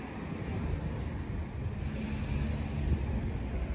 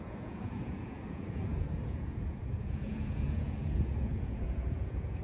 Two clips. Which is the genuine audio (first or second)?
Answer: first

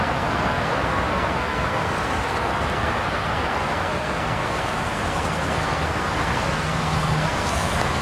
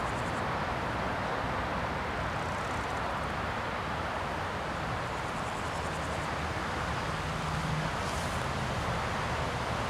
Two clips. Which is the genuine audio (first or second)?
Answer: second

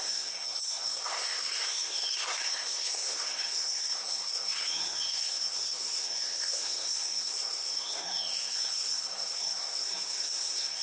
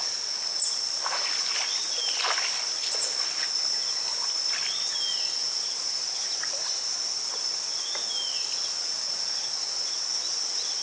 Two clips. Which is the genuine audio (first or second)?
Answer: second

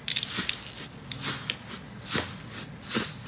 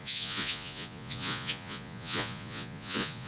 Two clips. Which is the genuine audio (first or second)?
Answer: first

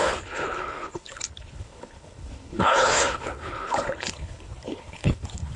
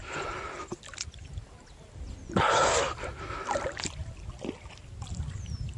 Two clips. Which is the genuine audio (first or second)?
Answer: second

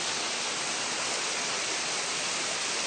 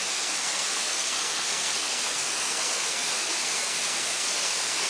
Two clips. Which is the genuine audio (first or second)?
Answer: first